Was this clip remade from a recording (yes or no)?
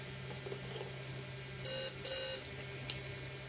no